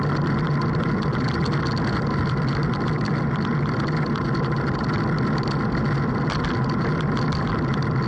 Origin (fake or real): real